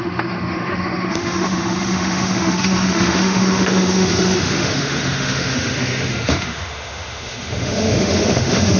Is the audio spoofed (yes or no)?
yes